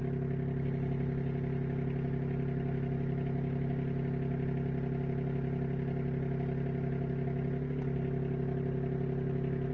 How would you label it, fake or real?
real